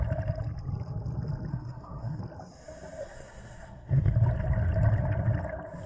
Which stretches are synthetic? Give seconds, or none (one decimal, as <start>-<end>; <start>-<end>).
1.5-2.2; 3.0-4.1

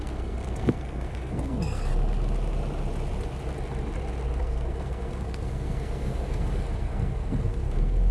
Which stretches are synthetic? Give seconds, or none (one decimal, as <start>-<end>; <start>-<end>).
0.0-1.9; 4.4-8.1

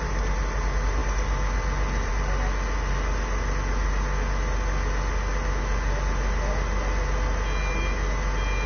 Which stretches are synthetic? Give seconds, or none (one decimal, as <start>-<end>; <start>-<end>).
none